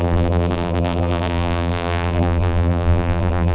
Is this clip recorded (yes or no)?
no